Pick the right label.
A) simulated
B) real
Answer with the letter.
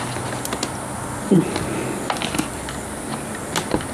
B